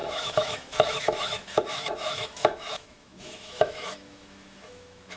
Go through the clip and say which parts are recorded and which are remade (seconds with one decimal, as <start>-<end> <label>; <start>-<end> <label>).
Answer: 0.0-5.2 remade